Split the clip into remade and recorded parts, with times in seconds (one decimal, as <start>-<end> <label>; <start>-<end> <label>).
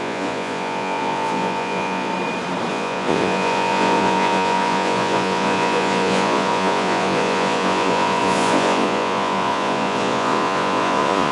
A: 0.0-2.1 remade; 2.1-2.7 recorded; 2.7-11.3 remade